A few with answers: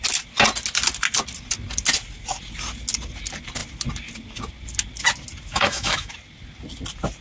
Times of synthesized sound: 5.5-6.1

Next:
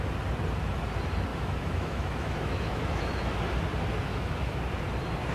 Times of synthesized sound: 1.3-3.4; 4.1-4.6

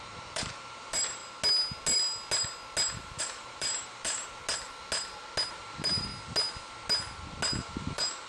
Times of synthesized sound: 0.0-1.2; 3.2-4.4; 5.5-6.1; 7.6-8.3